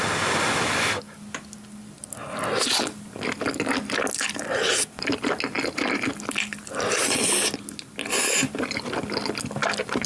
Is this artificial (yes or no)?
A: no